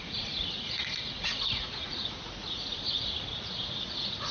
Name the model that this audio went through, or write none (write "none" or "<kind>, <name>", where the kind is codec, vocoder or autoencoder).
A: vocoder, Vocos